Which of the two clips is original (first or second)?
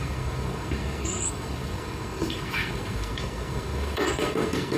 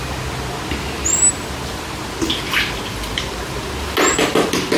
second